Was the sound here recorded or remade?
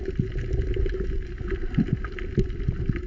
recorded